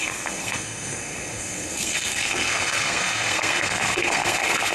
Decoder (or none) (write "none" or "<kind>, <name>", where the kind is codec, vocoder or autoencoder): codec, SNAC